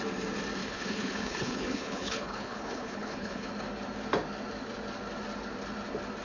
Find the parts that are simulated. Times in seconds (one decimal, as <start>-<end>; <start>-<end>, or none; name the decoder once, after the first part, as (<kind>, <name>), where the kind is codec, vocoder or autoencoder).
0.6-3.5 (codec, HILCodec)